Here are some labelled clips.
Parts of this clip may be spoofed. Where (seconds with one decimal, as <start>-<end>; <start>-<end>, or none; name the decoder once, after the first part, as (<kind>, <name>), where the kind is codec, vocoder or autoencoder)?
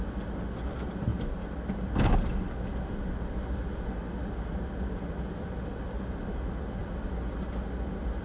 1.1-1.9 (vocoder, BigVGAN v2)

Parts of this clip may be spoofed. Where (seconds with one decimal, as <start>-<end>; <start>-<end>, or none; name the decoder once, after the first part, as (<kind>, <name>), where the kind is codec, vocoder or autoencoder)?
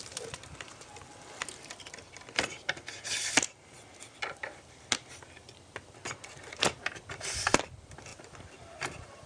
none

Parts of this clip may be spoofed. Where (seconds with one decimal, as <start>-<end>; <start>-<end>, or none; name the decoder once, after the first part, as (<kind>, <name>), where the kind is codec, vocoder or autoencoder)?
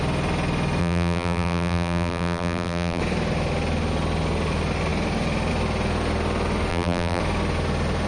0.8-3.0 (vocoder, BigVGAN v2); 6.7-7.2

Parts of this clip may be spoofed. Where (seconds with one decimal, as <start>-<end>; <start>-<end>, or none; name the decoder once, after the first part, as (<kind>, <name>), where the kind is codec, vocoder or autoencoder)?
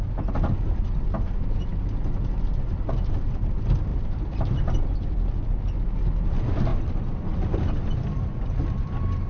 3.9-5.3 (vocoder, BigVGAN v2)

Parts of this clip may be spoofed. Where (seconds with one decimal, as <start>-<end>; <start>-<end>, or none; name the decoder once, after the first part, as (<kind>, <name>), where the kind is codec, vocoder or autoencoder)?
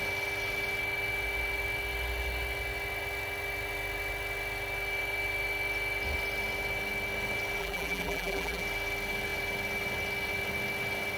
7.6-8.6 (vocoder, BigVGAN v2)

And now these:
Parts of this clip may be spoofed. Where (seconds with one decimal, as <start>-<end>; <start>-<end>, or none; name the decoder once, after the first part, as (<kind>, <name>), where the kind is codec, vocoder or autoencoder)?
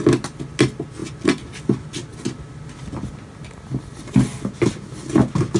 none